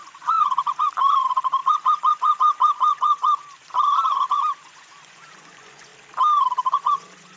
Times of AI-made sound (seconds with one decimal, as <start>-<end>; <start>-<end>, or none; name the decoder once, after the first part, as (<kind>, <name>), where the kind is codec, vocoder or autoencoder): 0.0-5.9 (vocoder, Vocos); 6.7-7.4